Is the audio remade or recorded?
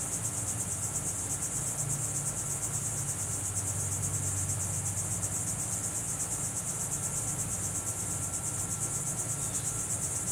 recorded